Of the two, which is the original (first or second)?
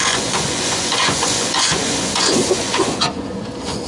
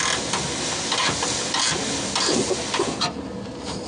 second